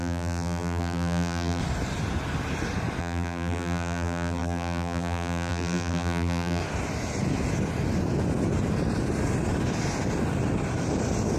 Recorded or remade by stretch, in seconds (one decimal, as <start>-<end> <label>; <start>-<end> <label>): 0.0-1.6 remade; 1.6-3.0 recorded; 3.0-6.6 remade; 6.6-11.4 recorded